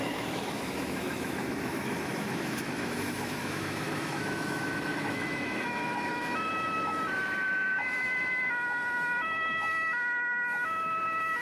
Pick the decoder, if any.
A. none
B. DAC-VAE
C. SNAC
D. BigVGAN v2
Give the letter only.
B